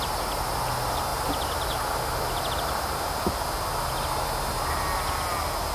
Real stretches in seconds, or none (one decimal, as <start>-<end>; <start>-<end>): 0.0-5.7